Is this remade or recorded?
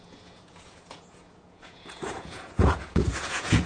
remade